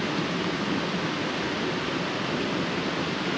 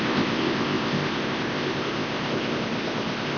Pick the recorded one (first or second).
first